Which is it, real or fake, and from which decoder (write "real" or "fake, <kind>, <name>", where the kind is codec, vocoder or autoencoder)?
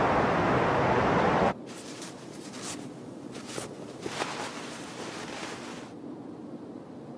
real